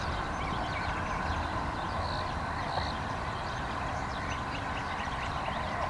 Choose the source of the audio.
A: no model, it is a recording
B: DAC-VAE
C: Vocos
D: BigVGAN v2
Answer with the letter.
D